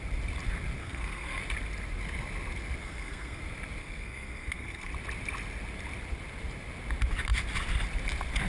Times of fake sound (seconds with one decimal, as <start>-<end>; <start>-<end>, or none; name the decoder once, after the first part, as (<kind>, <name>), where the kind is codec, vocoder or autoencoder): 0.8-1.4 (codec, SNAC); 2.8-3.4; 3.8-4.9